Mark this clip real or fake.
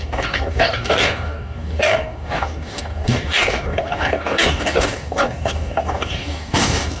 fake